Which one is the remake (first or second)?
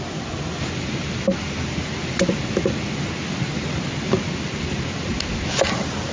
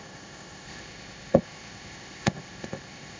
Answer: second